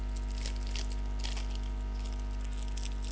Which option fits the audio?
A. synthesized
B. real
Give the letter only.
B